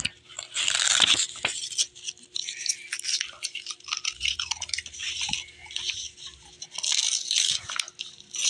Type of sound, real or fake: real